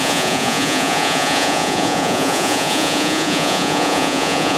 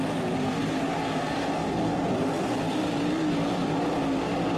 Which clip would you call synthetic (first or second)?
first